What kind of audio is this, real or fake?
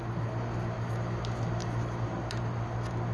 real